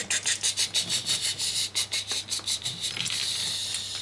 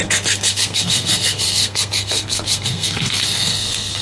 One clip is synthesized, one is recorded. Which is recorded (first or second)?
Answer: first